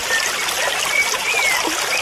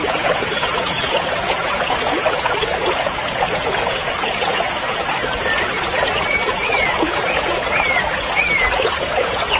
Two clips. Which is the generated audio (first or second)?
second